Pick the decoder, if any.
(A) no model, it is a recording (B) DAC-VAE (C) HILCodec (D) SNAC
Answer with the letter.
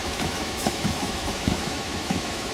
B